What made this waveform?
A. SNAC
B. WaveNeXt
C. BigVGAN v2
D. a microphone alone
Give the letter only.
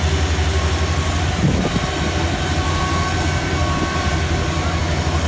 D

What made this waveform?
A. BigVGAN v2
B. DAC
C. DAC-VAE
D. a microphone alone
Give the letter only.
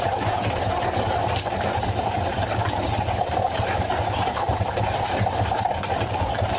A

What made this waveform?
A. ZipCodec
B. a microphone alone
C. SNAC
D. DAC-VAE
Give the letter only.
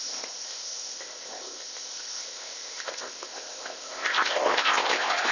A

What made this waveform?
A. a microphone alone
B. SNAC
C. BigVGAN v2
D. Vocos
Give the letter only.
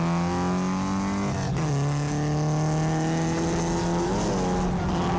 A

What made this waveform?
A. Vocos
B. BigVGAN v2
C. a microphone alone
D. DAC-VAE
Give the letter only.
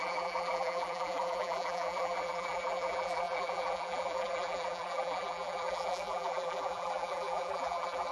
B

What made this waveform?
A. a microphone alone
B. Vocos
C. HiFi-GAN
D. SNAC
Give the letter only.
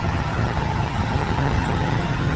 C